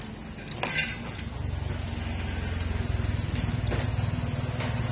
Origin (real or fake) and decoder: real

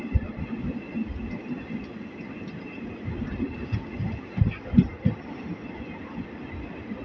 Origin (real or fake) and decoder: real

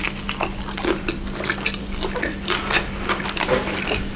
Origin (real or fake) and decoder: real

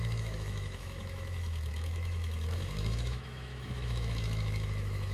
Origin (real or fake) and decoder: fake, autoencoder, DAC-VAE